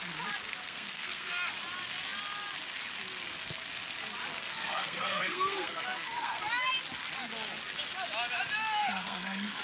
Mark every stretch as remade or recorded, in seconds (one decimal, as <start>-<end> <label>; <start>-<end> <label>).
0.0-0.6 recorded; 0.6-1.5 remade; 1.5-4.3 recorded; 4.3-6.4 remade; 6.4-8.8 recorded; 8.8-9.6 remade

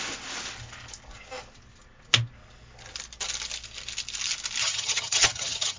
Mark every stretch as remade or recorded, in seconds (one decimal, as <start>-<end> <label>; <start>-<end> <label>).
0.0-4.6 recorded; 4.6-5.8 remade

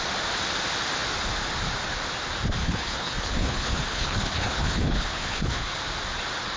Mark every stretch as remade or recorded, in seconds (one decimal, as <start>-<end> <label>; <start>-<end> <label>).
0.0-2.6 recorded; 2.6-5.7 remade; 5.7-6.6 recorded

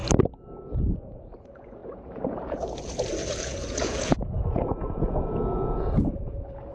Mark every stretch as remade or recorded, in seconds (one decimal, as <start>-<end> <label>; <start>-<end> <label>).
0.0-0.9 recorded; 0.9-6.7 remade

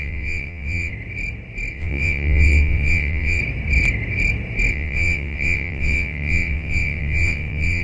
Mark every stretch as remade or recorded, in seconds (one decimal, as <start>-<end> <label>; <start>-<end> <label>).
0.0-0.9 remade; 0.9-1.7 recorded; 1.7-3.4 remade; 3.4-4.7 recorded; 4.7-7.8 remade

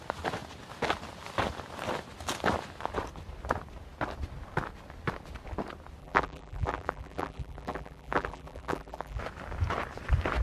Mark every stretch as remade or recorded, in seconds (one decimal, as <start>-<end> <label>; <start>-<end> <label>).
0.0-6.0 recorded; 6.0-9.2 remade; 9.2-10.4 recorded

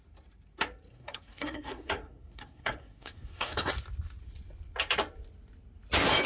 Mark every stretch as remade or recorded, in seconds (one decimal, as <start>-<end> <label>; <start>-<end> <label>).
0.0-0.9 recorded; 0.9-3.7 remade; 3.7-6.3 recorded

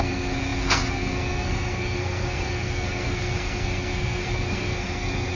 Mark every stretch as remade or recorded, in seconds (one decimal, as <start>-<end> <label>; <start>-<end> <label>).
0.0-5.3 remade